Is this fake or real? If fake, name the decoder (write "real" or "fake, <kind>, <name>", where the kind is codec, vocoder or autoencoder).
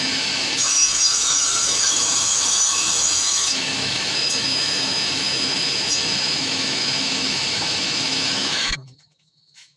fake, autoencoder, DAC-VAE